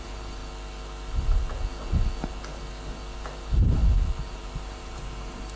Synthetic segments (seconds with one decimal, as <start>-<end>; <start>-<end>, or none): 0.0-0.4; 3.4-3.8; 4.3-5.6